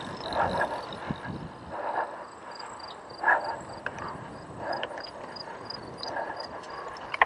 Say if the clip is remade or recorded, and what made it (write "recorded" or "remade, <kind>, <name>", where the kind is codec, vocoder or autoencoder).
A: recorded